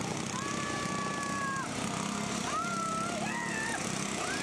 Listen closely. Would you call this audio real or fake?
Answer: real